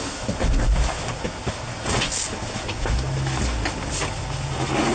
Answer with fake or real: real